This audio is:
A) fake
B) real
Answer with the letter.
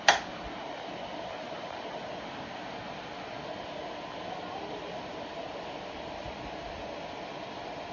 B